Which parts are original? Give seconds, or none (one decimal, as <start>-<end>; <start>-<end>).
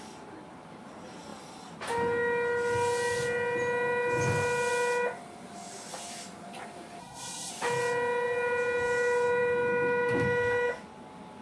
0.0-7.0; 7.5-11.4